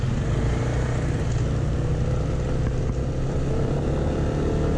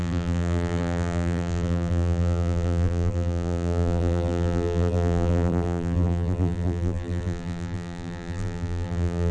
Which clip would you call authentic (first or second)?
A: first